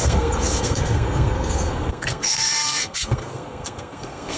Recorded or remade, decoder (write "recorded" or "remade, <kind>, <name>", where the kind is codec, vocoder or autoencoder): remade, codec, SNAC